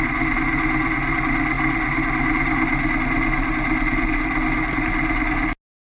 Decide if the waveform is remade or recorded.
recorded